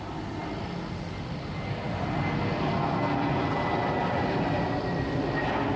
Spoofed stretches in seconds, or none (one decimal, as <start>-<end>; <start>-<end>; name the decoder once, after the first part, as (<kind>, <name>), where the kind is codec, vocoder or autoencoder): none